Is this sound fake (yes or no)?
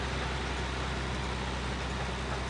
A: no